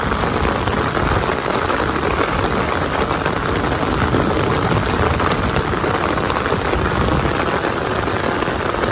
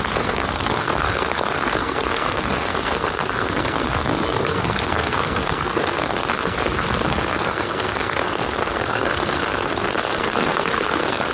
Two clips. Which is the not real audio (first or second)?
second